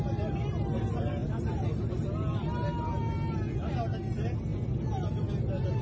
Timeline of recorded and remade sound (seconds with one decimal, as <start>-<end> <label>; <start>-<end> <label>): 0.0-5.8 recorded